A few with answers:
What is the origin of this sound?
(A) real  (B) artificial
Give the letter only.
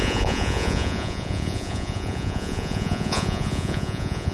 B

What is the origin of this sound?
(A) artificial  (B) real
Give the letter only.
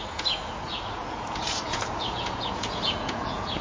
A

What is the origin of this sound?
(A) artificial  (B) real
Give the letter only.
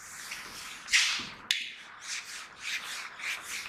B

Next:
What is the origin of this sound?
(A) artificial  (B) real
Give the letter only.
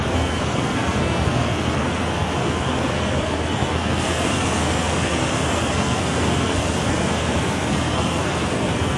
A